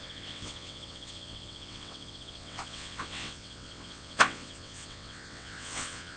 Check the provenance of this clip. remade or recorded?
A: remade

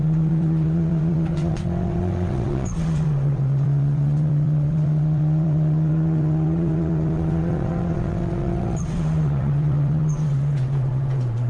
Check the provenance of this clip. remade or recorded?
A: remade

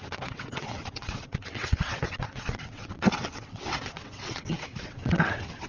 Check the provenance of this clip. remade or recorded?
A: remade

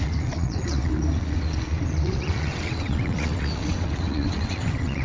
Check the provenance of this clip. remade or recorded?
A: remade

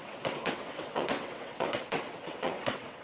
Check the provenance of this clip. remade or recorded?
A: remade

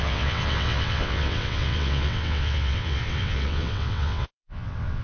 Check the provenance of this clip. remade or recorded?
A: remade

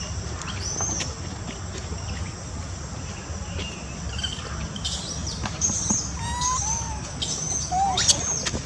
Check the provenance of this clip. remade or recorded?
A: recorded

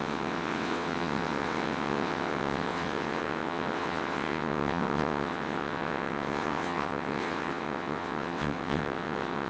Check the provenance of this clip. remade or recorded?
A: remade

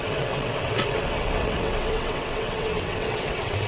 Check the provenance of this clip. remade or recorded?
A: remade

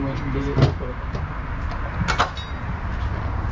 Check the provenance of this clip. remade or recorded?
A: recorded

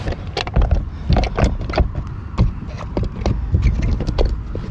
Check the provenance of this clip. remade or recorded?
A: recorded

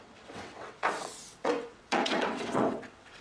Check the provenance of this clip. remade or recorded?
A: remade